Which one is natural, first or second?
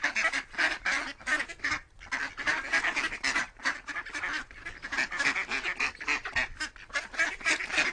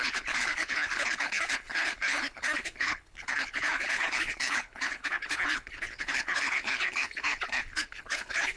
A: first